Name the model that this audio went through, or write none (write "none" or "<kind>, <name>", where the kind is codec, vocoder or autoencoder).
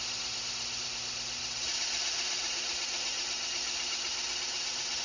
none